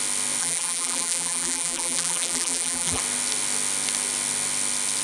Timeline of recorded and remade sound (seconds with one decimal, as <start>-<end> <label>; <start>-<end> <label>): 0.0-0.4 recorded; 0.4-3.0 remade; 3.0-5.0 recorded